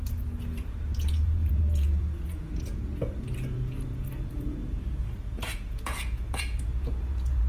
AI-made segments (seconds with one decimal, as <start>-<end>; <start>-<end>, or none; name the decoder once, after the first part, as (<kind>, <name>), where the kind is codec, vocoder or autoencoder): 0.0-7.5 (vocoder, Vocos)